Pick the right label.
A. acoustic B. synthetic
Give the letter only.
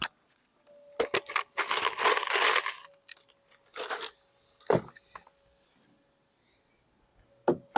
A